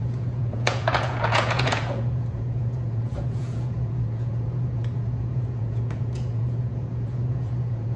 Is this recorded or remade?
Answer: remade